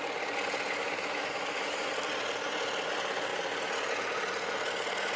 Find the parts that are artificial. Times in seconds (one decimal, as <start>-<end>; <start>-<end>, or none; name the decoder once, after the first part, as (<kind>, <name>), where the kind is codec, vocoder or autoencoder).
0.8-1.9 (autoencoder, DAC-VAE)